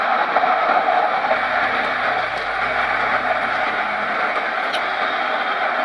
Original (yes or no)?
yes